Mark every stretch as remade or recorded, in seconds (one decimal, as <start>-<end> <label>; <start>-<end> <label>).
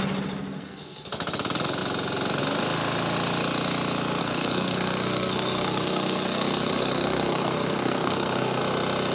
0.0-0.5 recorded; 0.5-1.1 remade; 1.1-4.2 recorded; 4.2-8.6 remade; 8.6-9.1 recorded